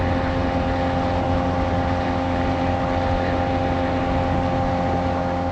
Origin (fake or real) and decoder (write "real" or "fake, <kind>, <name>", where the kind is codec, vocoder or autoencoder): real